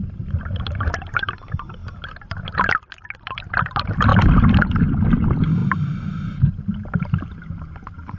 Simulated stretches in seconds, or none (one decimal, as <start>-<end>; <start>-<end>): none

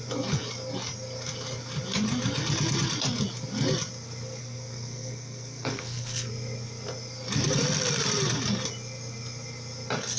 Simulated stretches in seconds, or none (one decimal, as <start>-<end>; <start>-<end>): 4.4-6.3

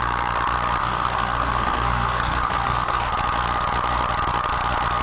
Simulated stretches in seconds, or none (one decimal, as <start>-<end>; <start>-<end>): 0.8-3.1

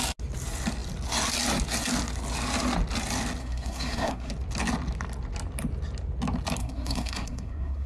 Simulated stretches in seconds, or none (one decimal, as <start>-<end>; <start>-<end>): 3.4-4.3; 6.6-7.9

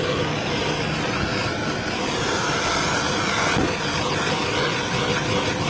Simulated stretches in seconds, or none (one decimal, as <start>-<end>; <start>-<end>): none

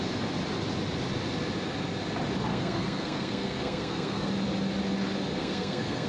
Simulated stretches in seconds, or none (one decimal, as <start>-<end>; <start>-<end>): 2.5-4.3; 5.4-6.1

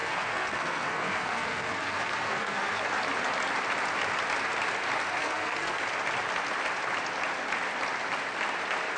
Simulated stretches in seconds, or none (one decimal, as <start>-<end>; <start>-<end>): 0.0-2.9; 5.2-5.8

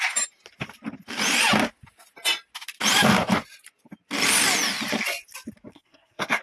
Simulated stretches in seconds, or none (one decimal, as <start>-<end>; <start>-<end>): 5.7-6.4